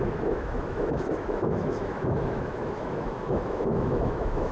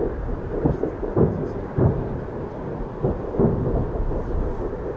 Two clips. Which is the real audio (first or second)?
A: second